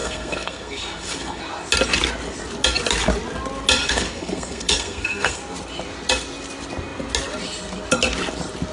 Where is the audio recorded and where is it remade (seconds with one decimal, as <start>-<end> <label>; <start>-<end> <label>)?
0.0-1.4 remade; 1.4-3.8 recorded; 3.8-5.4 remade; 5.4-8.7 recorded